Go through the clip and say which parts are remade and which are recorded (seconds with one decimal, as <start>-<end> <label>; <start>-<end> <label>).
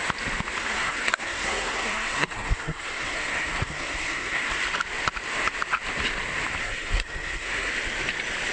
0.0-0.6 recorded; 0.6-4.5 remade; 4.5-6.6 recorded; 6.6-7.7 remade; 7.7-8.5 recorded